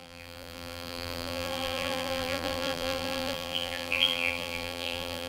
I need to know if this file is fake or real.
fake